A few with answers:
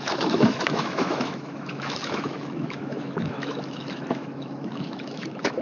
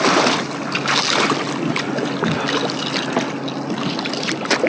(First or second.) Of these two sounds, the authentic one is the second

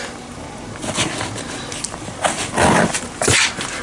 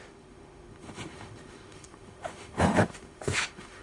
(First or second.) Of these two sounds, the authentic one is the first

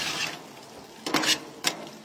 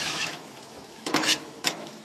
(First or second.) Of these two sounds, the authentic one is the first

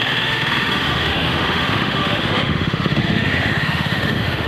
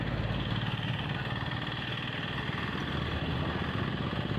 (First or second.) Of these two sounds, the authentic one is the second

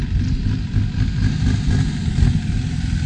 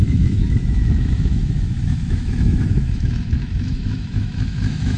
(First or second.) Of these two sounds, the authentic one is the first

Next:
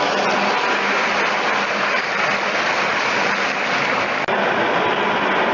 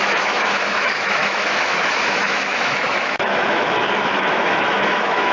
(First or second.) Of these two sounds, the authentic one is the first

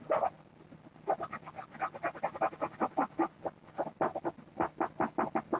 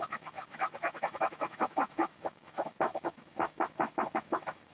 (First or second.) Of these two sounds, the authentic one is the first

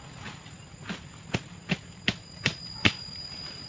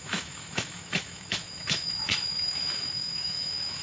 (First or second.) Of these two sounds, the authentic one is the first